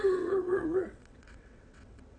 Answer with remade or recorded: remade